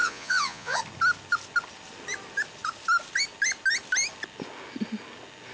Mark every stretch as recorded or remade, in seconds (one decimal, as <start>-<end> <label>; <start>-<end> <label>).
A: 0.0-0.8 remade; 0.8-5.5 recorded